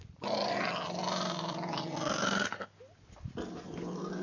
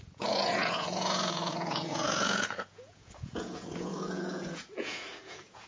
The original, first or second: first